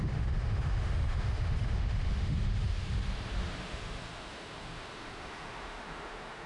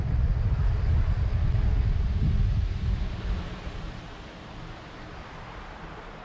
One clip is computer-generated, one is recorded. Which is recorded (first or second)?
second